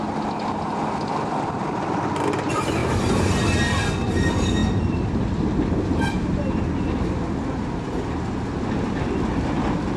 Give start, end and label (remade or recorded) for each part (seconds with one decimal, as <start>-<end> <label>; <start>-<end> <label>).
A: 0.0-2.8 recorded; 2.8-3.3 remade; 3.3-10.0 recorded